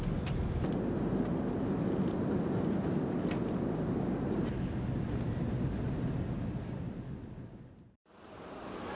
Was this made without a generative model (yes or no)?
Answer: yes